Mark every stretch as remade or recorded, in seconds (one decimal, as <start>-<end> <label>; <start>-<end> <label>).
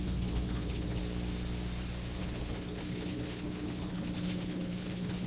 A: 0.0-1.0 remade; 1.0-2.2 recorded; 2.2-5.3 remade